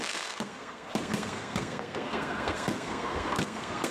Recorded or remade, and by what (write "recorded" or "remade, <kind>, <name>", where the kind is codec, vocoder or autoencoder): remade, codec, SNAC